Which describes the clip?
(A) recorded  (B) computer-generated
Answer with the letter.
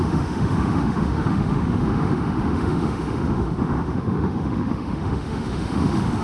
B